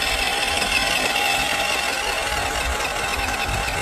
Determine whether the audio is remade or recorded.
recorded